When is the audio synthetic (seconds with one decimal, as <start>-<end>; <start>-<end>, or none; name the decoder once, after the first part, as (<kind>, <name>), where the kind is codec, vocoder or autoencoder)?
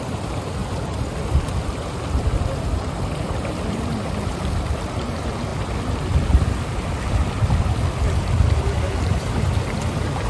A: 0.0-0.6 (vocoder, BigVGAN v2); 1.2-5.5; 7.1-10.3